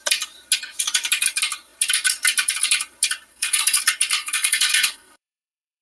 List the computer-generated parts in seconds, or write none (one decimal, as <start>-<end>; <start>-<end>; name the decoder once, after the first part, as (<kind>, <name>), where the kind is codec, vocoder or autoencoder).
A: 3.3-3.8 (codec, SNAC); 4.2-5.8